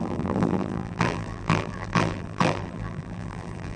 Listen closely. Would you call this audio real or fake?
fake